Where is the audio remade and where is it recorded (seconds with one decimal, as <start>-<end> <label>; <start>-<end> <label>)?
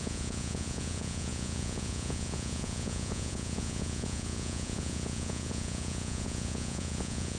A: 0.0-7.4 remade